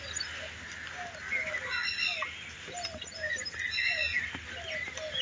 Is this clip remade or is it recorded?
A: recorded